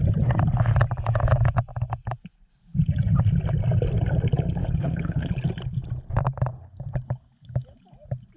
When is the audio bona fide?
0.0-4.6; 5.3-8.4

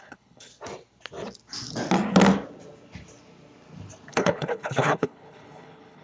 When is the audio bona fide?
0.5-4.1

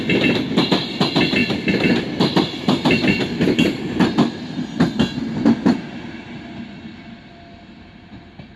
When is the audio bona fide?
0.0-8.6

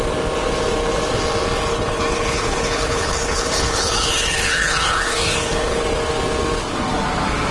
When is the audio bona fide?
0.0-1.7; 5.8-7.5

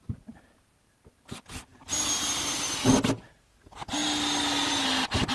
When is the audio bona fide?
0.0-5.3